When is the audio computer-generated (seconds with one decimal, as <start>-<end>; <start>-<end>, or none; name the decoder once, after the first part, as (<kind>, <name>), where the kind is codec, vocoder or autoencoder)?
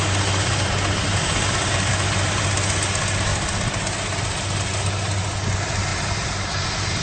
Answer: none